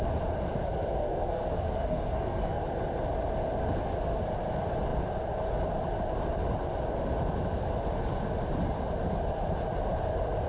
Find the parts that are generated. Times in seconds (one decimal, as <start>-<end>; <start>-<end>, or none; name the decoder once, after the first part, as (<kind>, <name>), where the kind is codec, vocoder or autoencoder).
1.0-2.6 (codec, SNAC)